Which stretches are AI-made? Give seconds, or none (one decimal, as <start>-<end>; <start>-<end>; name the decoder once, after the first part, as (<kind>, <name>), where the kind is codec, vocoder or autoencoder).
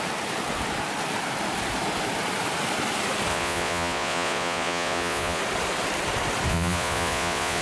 3.3-5.4 (vocoder, Vocos); 6.5-7.6